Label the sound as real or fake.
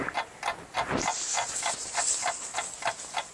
real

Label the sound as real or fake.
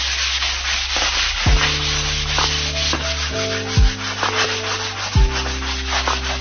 real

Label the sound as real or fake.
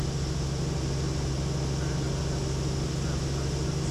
real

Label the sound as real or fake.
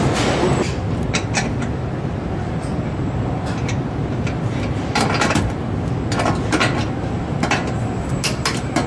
real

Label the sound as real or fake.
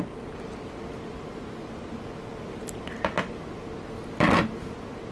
real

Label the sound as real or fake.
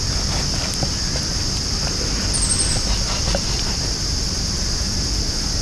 real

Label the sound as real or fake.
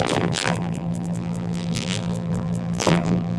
fake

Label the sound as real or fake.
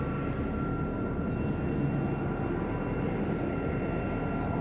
real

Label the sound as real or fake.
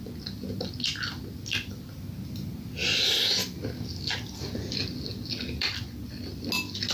real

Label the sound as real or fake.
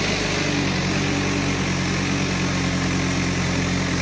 real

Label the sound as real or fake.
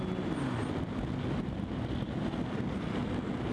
real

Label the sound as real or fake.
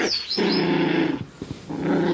real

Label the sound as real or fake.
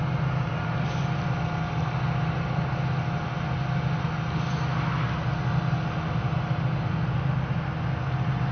real